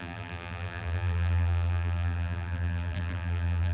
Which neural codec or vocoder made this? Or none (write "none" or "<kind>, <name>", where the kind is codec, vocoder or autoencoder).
vocoder, BigVGAN v2